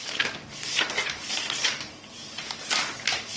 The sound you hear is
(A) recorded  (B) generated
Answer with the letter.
A